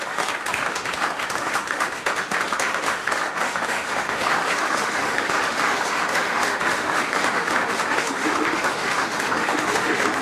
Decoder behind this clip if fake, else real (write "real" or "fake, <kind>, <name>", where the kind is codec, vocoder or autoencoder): fake, autoencoder, DAC-VAE